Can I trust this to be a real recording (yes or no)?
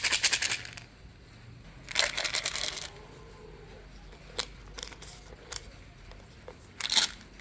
yes